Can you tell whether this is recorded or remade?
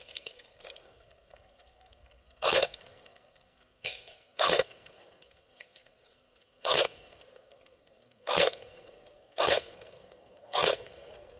remade